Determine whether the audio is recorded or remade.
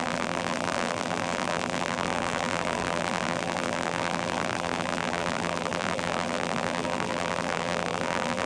remade